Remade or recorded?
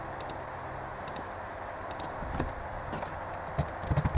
recorded